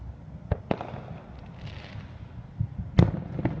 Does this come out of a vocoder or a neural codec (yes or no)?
no